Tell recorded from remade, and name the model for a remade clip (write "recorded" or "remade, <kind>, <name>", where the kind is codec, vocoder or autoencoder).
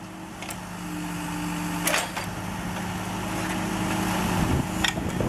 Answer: recorded